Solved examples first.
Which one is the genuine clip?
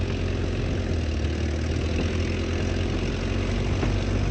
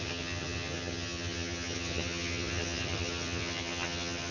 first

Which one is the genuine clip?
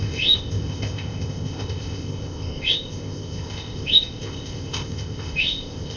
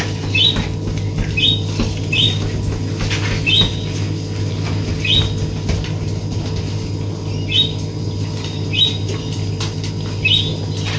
second